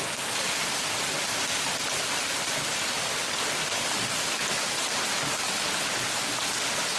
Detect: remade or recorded recorded